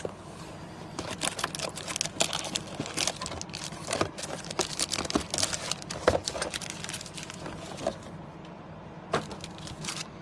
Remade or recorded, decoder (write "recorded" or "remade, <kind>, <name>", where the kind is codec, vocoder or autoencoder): recorded